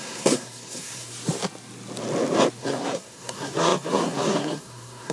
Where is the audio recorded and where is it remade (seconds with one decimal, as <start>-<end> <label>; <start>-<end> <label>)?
0.0-1.1 remade; 1.1-2.6 recorded; 2.6-5.1 remade